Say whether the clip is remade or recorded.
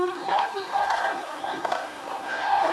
remade